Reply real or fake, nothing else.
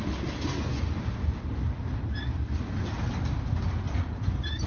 real